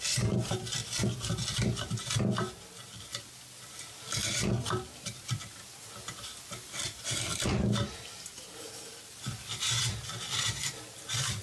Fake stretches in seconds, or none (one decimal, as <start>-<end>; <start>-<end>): none